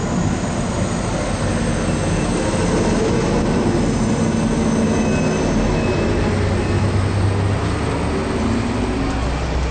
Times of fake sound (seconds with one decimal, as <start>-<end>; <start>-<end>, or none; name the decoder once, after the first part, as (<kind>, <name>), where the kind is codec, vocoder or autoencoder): none